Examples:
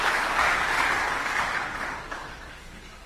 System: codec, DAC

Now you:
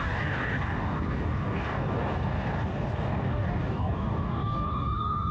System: codec, DAC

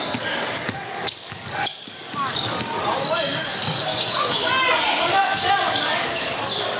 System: codec, DAC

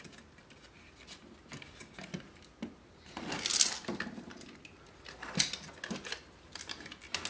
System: none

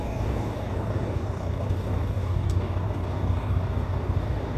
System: codec, DAC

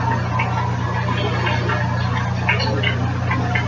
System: none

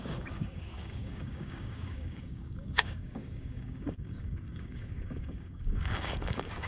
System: codec, DAC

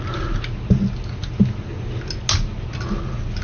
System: none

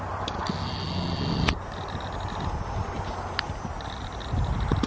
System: none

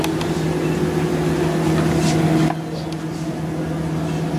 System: none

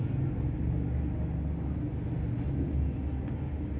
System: none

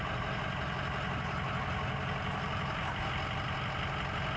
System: none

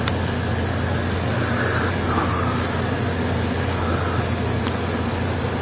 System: none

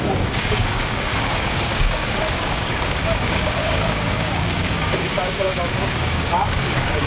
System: codec, DAC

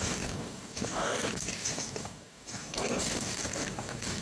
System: codec, DAC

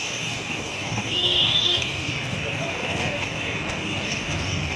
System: codec, DAC